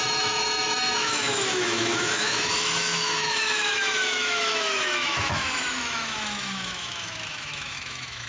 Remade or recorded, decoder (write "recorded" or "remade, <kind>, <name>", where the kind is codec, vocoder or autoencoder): remade, autoencoder, DAC-VAE